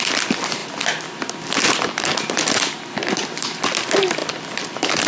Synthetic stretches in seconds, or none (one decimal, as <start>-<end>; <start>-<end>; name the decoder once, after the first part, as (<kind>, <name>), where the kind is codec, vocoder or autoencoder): none